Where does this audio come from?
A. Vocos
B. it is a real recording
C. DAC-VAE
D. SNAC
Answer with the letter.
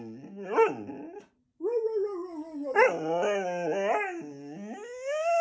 B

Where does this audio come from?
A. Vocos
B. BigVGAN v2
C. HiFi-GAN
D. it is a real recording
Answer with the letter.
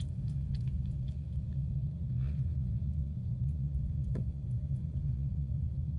A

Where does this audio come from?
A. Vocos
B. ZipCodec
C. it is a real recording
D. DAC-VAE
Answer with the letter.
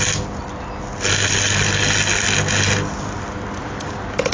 C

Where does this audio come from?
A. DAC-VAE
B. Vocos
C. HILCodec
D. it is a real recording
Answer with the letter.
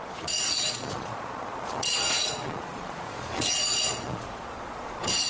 B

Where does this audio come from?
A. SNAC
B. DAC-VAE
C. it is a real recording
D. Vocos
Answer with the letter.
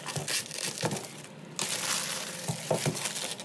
C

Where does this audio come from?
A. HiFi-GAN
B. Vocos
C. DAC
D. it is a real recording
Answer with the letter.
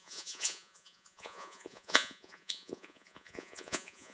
B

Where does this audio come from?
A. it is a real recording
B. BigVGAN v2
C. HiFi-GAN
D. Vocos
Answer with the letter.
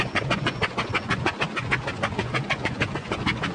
D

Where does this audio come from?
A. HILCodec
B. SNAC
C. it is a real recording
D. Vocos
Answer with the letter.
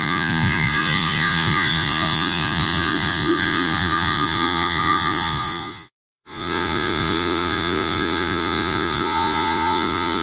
D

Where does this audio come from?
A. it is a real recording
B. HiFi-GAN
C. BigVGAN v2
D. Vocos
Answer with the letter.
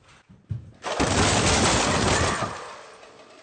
A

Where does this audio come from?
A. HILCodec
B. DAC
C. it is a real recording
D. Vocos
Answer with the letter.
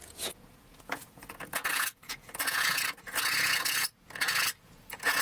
D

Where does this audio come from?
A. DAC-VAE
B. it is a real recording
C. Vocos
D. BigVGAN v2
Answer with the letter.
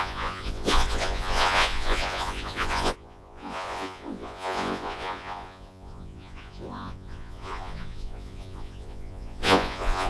C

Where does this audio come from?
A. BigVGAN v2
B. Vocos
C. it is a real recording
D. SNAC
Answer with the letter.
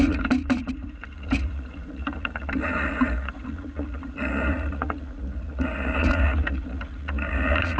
B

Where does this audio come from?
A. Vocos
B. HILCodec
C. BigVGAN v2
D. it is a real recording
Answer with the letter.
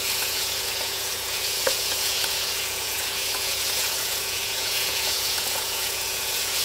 A